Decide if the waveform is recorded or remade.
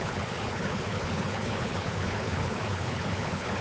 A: remade